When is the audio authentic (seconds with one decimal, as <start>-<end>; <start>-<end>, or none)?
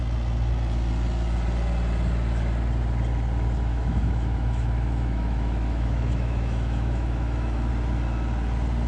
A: 0.0-3.7; 7.7-8.9